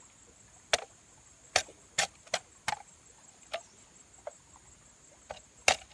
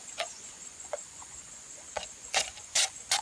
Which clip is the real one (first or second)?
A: first